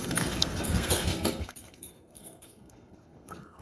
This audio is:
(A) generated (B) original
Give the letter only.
A